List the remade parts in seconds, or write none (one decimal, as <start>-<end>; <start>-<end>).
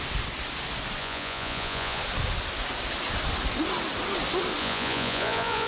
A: 1.0-2.0; 4.6-5.7